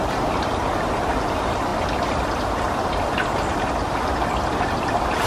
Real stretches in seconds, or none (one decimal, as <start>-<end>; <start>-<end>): 0.0-5.3